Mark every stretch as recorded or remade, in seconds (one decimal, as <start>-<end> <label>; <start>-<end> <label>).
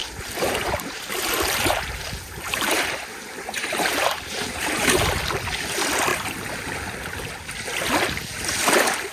0.0-5.1 remade; 5.1-6.1 recorded; 6.1-6.7 remade; 6.7-9.1 recorded